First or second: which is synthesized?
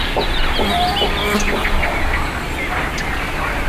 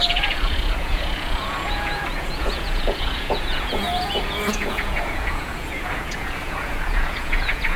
second